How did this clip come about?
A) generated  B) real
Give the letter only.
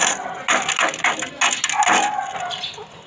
B